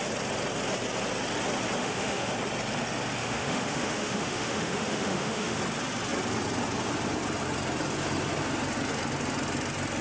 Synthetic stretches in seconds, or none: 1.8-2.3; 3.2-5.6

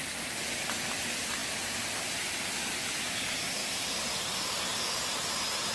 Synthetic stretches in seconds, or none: 3.6-4.9

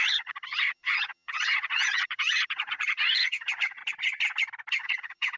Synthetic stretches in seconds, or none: 0.0-3.8; 4.7-5.4

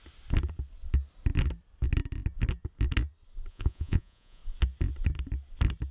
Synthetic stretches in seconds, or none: 3.5-4.4

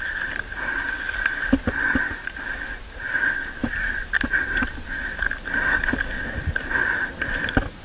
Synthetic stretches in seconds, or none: none

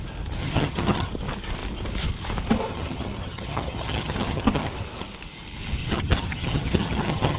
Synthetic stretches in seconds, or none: 0.4-1.1; 2.7-4.7; 5.8-7.4

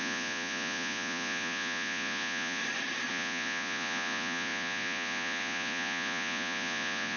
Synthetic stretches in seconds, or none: 0.0-2.6; 3.1-7.2

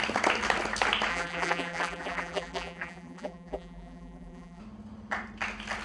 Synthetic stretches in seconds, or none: 1.1-4.6